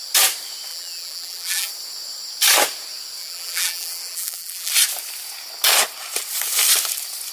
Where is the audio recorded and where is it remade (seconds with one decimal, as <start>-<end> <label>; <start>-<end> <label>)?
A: 0.0-0.7 recorded; 0.7-1.7 remade; 1.7-3.2 recorded; 3.2-4.7 remade; 4.7-7.3 recorded

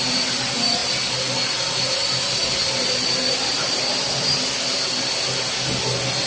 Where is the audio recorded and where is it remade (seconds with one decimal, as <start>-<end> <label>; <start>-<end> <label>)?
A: 0.0-6.3 recorded

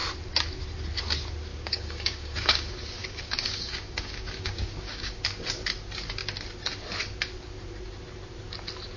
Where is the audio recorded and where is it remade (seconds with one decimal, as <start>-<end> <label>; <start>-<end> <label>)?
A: 0.0-1.5 recorded; 1.5-5.2 remade; 5.2-9.0 recorded

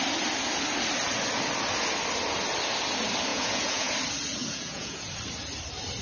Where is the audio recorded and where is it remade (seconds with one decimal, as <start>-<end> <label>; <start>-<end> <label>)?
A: 0.0-3.3 recorded; 3.3-3.9 remade; 3.9-4.4 recorded; 4.4-5.1 remade; 5.1-6.0 recorded